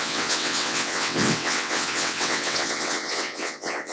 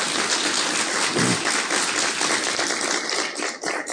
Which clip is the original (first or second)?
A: second